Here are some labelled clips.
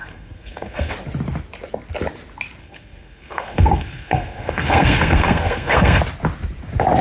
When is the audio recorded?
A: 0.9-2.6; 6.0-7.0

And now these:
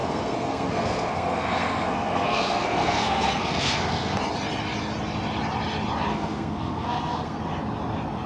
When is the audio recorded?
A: 4.2-6.1; 7.4-8.3